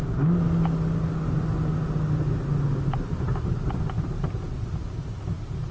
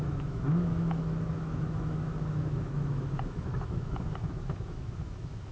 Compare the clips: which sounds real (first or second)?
first